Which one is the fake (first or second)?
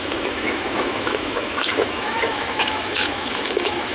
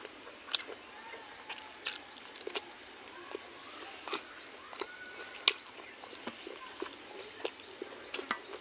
first